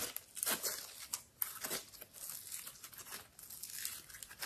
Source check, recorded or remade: recorded